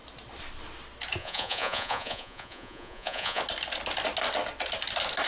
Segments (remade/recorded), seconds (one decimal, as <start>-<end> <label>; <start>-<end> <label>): 0.0-1.2 recorded; 1.2-3.4 remade; 3.4-5.3 recorded